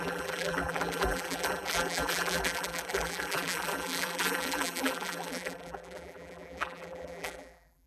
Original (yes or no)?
no